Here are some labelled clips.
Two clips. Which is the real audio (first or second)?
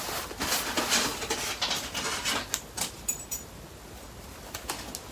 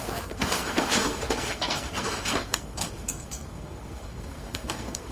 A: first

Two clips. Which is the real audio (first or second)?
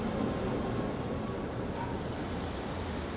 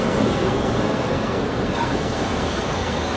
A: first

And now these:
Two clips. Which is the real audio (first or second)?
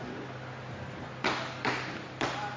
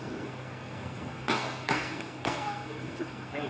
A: first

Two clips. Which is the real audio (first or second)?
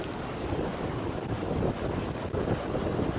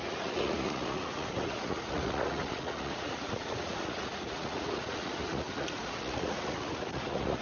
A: first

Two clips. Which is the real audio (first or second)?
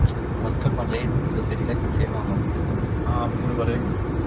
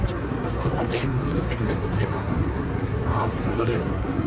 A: first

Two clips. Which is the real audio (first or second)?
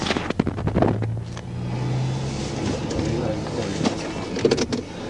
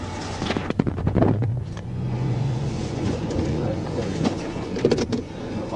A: first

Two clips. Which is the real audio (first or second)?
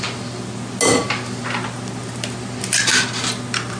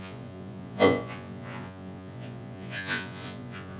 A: first